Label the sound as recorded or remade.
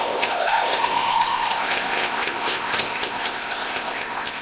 remade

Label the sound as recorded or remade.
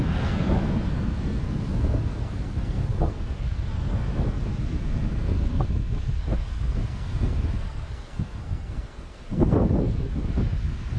remade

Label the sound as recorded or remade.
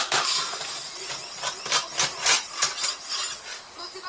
recorded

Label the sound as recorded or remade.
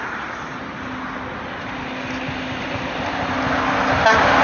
recorded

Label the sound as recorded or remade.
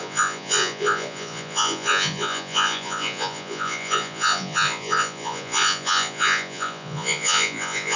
remade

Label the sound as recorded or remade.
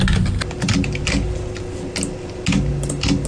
recorded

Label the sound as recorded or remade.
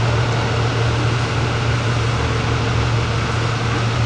recorded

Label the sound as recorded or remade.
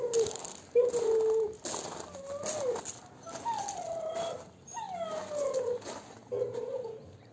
recorded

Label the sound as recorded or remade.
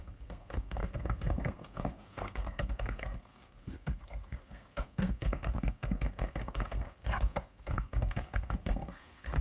remade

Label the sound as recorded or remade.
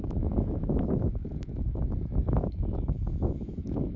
remade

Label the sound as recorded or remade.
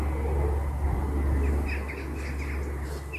recorded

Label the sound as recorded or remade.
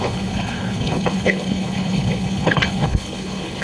remade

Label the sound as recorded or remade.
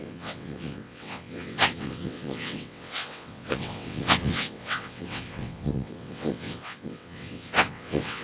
remade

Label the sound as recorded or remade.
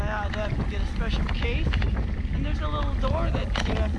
recorded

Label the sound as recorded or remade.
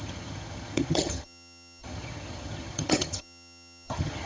remade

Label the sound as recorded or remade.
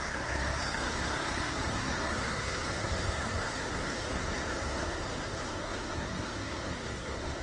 remade